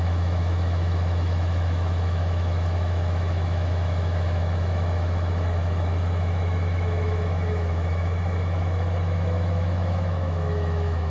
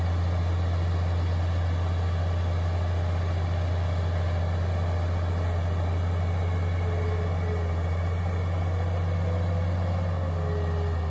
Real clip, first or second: second